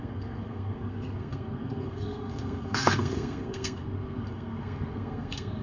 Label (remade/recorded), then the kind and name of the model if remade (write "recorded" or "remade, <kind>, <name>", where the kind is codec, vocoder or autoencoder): remade, codec, SNAC